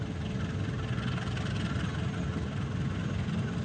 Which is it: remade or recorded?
recorded